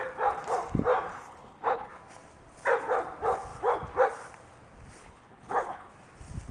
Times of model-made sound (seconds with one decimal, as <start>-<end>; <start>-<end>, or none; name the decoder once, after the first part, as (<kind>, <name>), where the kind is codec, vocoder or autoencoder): 1.1-1.9 (codec, HILCodec); 5.0-5.9